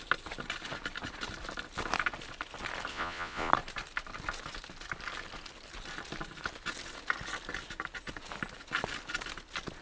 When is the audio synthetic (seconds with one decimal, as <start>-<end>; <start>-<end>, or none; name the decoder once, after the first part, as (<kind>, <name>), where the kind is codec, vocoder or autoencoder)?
2.9-3.5 (vocoder, Vocos)

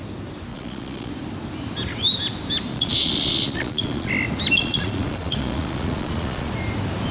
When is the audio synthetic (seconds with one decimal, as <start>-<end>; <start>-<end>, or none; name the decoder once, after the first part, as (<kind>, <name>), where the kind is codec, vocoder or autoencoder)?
0.5-1.1 (vocoder, Vocos); 2.7-4.1; 4.6-6.5